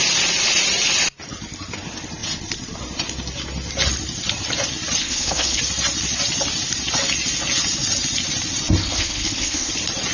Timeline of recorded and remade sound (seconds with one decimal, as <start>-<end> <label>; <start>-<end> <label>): 0.0-5.0 recorded; 5.0-5.6 remade; 5.6-8.8 recorded; 8.8-9.7 remade; 9.7-10.1 recorded